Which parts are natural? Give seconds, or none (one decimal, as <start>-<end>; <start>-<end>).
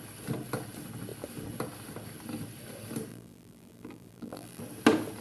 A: 0.0-3.1; 4.6-5.2